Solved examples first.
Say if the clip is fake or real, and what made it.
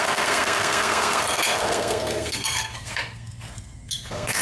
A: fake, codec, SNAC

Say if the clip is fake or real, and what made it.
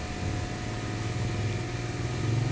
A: real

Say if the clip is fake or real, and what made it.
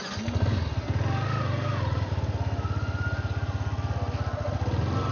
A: real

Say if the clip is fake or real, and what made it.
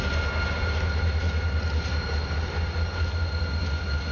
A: real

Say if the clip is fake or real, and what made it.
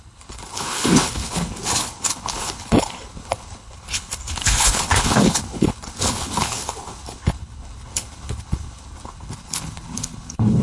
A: fake, codec, HILCodec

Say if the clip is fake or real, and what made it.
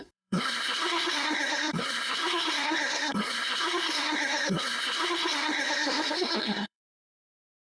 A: fake, codec, SNAC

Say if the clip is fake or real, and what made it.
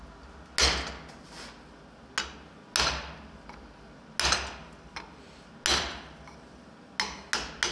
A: real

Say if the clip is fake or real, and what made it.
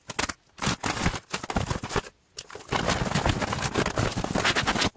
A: real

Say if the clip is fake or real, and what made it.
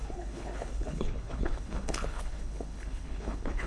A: fake, codec, HILCodec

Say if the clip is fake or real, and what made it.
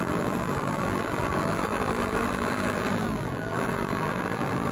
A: fake, vocoder, BigVGAN v2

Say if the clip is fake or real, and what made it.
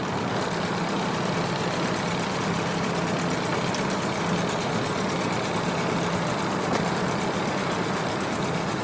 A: real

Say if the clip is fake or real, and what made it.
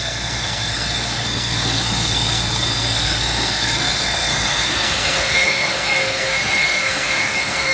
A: fake, codec, SNAC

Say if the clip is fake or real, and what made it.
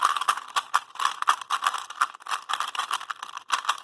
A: real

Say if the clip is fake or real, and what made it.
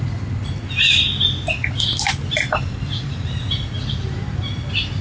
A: real